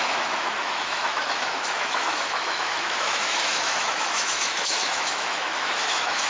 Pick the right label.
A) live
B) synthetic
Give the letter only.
B